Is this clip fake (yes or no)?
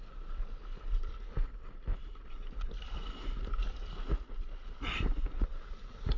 no